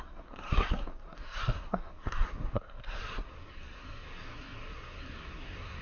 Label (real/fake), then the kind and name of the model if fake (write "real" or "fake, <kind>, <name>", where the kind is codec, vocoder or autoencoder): fake, codec, SNAC